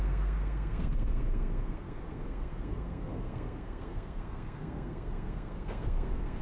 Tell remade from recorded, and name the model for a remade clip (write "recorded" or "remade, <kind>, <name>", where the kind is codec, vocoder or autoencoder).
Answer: remade, codec, SNAC